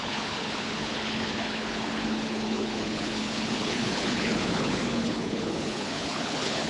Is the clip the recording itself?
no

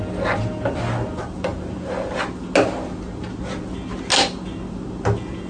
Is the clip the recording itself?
yes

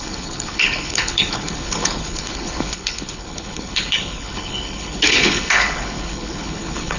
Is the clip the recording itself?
no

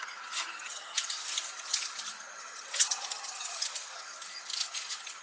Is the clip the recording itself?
no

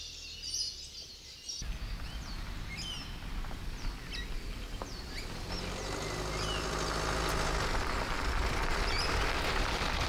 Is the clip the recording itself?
yes